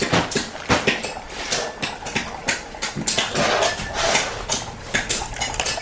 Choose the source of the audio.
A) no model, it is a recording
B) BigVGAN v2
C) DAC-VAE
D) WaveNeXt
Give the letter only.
A